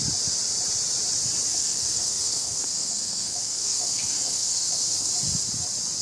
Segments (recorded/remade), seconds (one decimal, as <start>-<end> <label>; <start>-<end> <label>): 0.0-1.5 recorded; 1.5-5.1 remade; 5.1-6.0 recorded